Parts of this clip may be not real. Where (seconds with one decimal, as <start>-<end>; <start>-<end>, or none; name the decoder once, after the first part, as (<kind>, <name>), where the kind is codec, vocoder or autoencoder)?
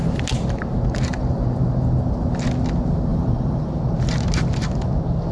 3.1-3.7 (vocoder, BigVGAN v2)